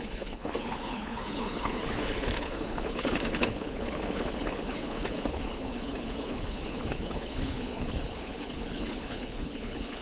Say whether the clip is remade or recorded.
remade